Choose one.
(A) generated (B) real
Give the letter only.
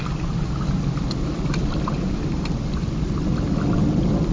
B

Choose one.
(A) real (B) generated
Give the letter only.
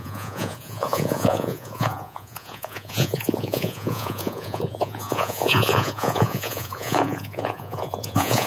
B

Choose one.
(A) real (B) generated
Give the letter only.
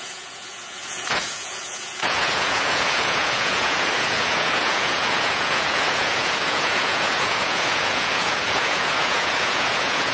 B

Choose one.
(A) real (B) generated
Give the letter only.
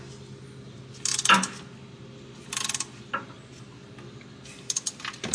A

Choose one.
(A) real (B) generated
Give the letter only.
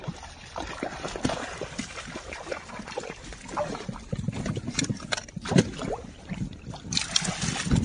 A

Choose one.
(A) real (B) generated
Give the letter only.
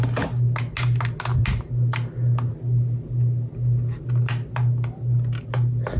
A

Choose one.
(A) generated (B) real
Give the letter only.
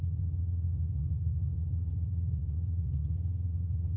A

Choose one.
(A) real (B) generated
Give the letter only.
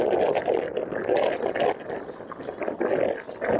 A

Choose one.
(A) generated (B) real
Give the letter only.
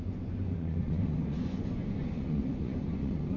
A